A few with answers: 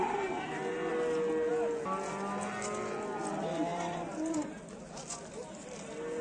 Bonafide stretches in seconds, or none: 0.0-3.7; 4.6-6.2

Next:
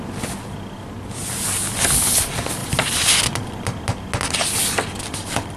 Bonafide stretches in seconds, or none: 0.0-5.6

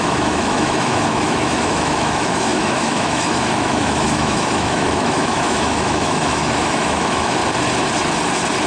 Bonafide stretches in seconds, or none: 7.4-8.7

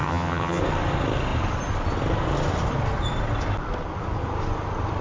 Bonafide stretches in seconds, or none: 0.6-5.0

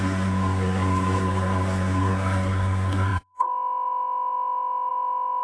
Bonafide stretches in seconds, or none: none

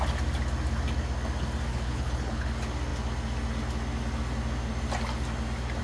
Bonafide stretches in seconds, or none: 0.0-1.7; 2.5-5.8

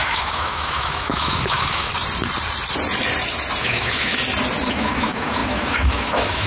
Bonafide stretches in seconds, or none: 1.9-3.6; 4.1-4.7

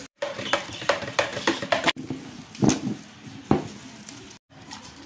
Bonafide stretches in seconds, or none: 1.3-4.4